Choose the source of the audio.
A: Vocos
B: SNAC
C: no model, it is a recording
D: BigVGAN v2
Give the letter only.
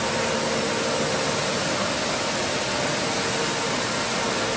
C